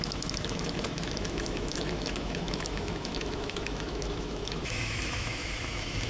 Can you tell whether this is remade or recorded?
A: remade